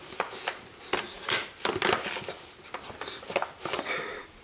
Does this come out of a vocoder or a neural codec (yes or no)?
no